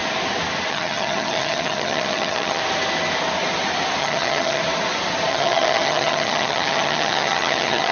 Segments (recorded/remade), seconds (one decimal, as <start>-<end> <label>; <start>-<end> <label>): 0.0-0.7 recorded; 0.7-2.6 remade; 2.6-4.0 recorded; 4.0-4.6 remade; 4.6-5.3 recorded; 5.3-7.9 remade